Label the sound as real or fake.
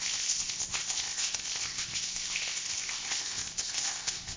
fake